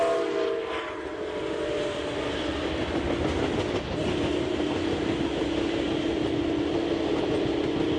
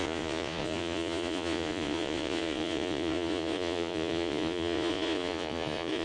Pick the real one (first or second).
first